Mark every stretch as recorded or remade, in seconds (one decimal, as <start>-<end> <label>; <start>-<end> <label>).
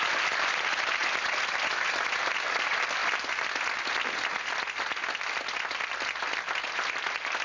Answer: 0.0-7.4 recorded